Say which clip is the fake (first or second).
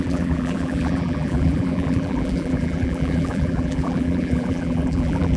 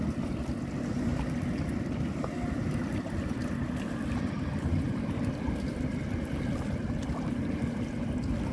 first